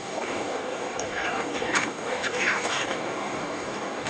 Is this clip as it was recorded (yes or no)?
no